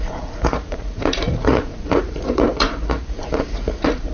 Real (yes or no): no